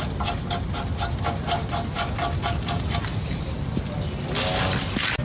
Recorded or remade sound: recorded